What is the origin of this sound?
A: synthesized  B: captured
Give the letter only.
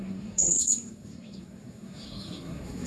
A